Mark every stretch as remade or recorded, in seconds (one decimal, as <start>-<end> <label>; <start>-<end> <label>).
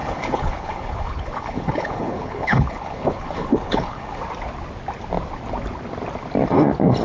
0.0-4.2 remade; 4.2-7.0 recorded